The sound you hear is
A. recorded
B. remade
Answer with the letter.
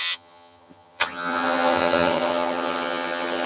B